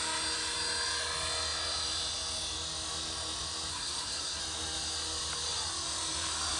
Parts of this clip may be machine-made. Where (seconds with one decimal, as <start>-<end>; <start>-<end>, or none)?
3.7-4.4